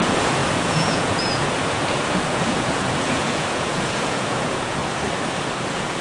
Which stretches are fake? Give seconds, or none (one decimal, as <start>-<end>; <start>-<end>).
0.0-4.8; 5.6-6.0